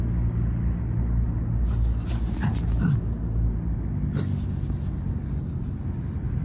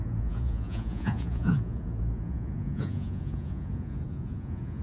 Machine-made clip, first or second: second